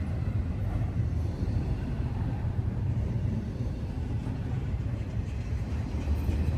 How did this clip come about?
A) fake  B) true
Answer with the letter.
A